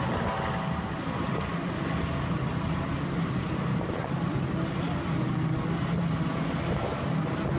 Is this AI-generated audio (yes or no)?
no